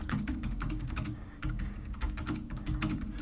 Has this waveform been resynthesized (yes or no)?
yes